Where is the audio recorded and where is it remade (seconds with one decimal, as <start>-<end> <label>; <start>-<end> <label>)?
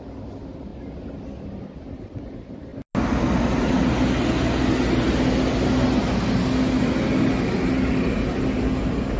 0.0-9.2 recorded